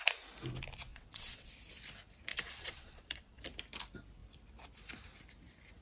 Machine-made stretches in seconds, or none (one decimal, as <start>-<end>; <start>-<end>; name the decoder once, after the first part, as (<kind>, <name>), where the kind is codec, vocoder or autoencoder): 0.9-1.5 (vocoder, WaveNeXt); 2.3-3.4